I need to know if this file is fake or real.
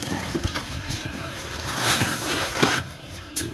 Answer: fake